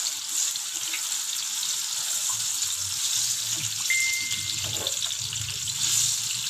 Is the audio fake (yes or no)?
no